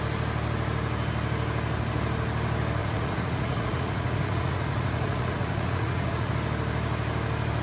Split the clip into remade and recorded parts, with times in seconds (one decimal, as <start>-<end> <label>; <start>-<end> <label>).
0.0-2.8 recorded; 2.8-6.3 remade; 6.3-7.6 recorded